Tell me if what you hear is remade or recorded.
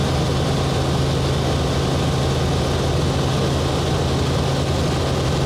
recorded